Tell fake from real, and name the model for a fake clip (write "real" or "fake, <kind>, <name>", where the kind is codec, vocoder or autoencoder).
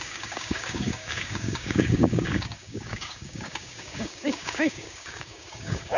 fake, codec, DAC